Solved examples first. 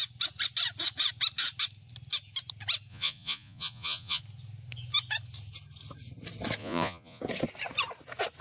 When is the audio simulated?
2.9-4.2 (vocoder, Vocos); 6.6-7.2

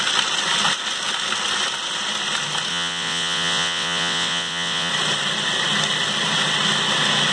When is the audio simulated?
2.7-4.9 (vocoder, WaveNeXt)

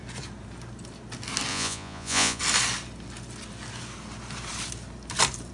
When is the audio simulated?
1.5-2.4 (vocoder, Vocos)